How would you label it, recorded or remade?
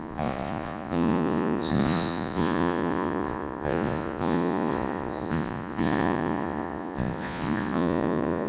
remade